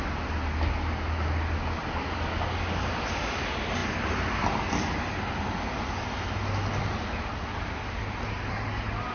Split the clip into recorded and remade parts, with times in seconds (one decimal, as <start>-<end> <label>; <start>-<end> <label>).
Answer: 0.0-9.1 recorded